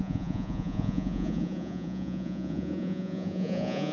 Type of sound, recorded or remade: remade